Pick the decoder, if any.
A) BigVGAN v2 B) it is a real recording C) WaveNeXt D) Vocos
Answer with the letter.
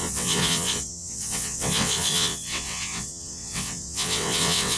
C